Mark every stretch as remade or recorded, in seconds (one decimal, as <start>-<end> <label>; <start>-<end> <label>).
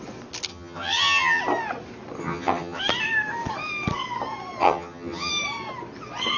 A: 0.0-0.5 recorded; 0.5-1.4 remade; 1.4-2.2 recorded; 2.2-2.8 remade; 2.8-4.6 recorded; 4.6-5.3 remade; 5.3-6.4 recorded